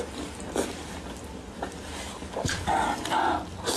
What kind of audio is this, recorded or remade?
recorded